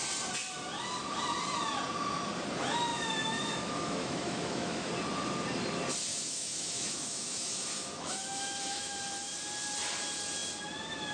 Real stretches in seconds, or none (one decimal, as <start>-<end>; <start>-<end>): 0.0-2.9; 4.9-6.1; 9.1-11.1